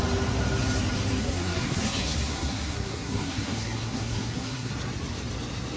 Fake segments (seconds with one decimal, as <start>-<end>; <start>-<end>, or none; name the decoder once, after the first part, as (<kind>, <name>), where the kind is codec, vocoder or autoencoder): 1.2-4.7 (codec, SNAC)